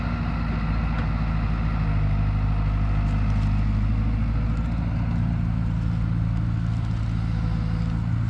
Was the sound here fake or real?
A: real